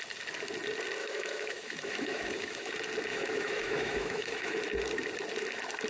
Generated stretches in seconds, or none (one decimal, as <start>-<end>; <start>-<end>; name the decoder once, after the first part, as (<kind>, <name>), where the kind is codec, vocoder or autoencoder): 1.0-2.7 (autoencoder, DAC-VAE); 3.1-4.6